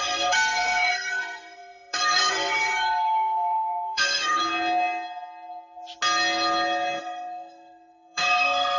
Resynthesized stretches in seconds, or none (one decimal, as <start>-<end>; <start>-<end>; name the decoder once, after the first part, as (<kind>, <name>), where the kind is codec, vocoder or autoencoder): 0.0-4.4 (codec, SNAC); 7.0-8.8